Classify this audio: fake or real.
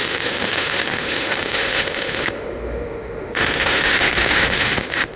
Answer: fake